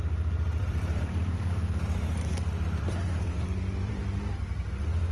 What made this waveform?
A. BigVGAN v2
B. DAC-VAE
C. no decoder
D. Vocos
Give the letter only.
A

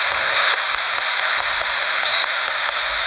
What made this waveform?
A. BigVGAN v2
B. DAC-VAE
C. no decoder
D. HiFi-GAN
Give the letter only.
B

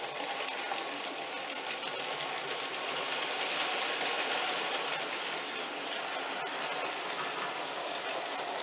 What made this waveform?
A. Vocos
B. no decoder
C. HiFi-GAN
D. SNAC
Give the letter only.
B